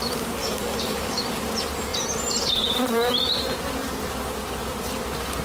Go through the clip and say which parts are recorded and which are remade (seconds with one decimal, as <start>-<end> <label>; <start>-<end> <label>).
0.0-0.4 recorded; 0.4-1.2 remade; 1.2-5.4 recorded